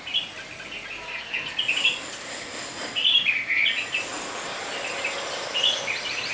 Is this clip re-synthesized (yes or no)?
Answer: no